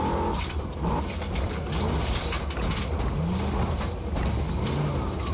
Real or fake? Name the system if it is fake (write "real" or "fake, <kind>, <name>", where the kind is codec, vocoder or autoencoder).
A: real